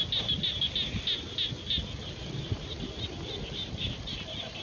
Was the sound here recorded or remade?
recorded